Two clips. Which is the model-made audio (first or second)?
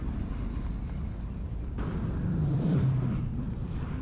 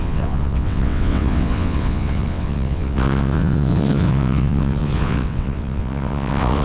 second